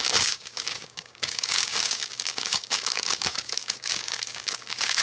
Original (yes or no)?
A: no